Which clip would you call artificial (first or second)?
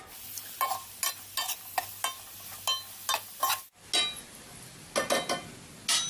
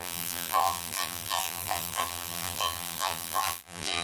second